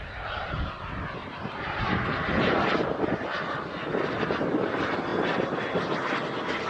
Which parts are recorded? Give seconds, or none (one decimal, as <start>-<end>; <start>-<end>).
0.0-1.2; 1.8-6.7